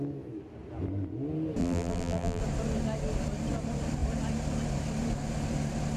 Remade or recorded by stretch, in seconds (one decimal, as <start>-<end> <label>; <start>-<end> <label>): 0.0-1.6 recorded; 1.6-2.4 remade; 2.4-6.0 recorded